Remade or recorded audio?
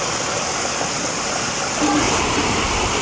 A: recorded